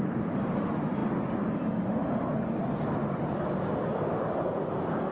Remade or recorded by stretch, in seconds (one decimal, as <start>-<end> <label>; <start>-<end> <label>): 0.0-1.0 remade; 1.0-4.1 recorded; 4.1-5.1 remade